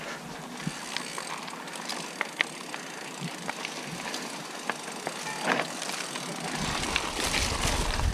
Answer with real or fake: real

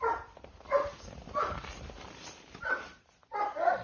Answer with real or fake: real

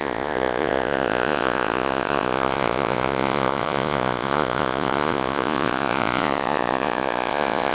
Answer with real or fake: fake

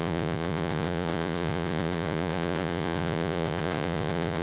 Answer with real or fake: fake